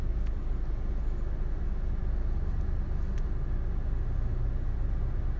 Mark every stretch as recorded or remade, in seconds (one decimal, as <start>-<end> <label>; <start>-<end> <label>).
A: 0.0-5.4 recorded

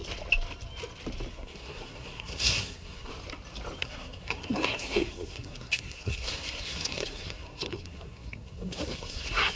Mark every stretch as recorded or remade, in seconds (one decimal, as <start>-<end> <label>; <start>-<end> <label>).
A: 0.0-1.3 recorded; 1.3-3.1 remade; 3.1-3.8 recorded; 3.8-9.6 remade

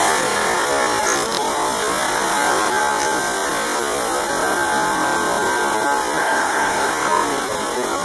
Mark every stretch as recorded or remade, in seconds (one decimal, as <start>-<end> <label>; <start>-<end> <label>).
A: 0.0-6.2 recorded; 6.2-6.9 remade; 6.9-8.0 recorded

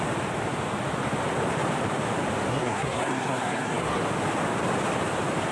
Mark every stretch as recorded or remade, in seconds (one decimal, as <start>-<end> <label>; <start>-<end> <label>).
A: 0.0-2.5 recorded; 2.5-4.0 remade; 4.0-5.5 recorded

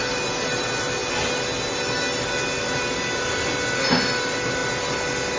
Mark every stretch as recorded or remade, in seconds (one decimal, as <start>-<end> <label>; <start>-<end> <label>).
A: 0.0-5.4 recorded

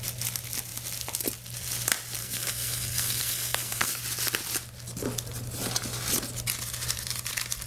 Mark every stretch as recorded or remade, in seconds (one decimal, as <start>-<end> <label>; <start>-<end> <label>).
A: 0.0-2.2 recorded; 2.2-4.0 remade; 4.0-7.7 recorded